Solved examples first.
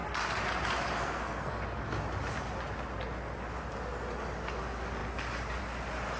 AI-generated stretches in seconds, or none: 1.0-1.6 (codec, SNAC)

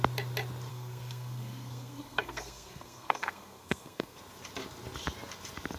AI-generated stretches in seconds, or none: 0.7-4.2 (codec, SNAC)

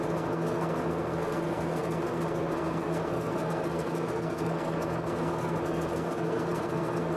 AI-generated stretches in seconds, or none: 0.0-7.2 (codec, SNAC)

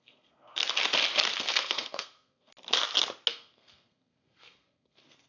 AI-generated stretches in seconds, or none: 0.0-0.6 (codec, SNAC); 1.4-2.5; 3.3-5.3

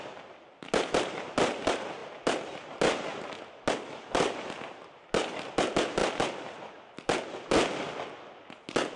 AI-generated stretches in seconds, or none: none

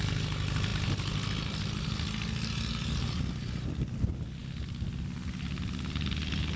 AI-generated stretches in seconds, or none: none